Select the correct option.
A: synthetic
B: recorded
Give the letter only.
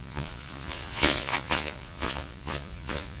A